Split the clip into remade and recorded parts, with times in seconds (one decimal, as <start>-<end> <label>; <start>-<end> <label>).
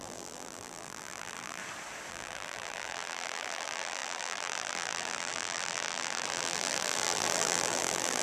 0.0-1.6 remade; 1.6-2.1 recorded; 2.1-8.2 remade